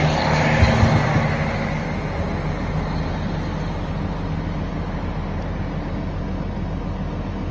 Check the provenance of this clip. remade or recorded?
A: recorded